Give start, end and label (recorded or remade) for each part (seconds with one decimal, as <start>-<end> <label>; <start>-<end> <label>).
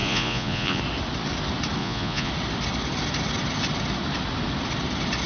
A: 0.0-0.8 remade; 0.8-1.8 recorded; 1.8-2.3 remade; 2.3-5.3 recorded